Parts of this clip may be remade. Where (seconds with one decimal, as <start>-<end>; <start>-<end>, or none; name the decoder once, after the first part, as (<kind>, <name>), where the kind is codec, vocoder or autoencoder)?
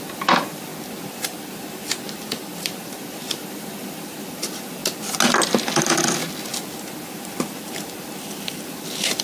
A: 0.0-0.7 (vocoder, BigVGAN v2); 2.5-4.8; 5.3-6.2